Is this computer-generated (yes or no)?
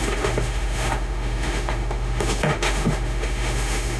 yes